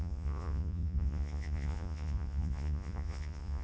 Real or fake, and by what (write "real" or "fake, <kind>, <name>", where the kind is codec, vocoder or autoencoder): fake, vocoder, Vocos